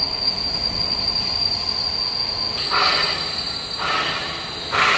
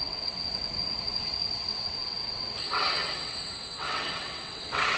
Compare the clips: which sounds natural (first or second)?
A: first